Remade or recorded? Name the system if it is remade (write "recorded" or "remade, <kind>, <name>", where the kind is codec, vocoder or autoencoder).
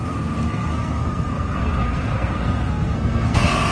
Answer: remade, codec, SNAC